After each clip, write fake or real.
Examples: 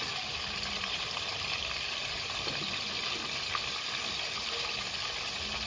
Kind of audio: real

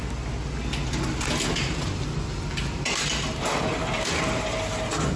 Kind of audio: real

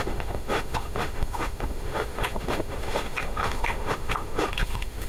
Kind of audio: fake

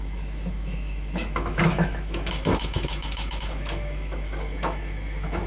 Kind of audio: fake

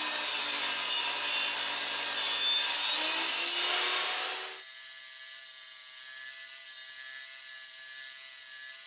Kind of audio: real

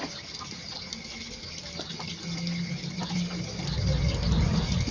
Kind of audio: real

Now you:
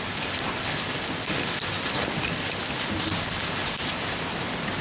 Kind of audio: real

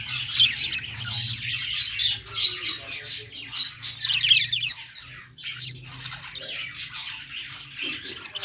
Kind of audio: real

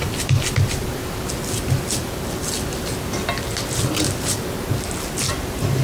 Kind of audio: real